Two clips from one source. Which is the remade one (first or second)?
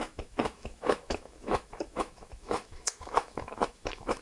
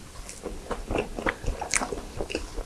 first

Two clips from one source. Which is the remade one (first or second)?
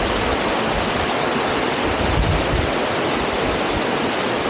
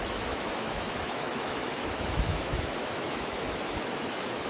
second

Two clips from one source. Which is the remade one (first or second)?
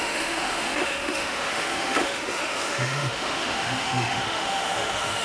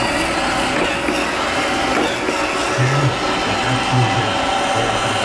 first